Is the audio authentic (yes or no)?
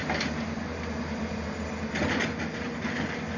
yes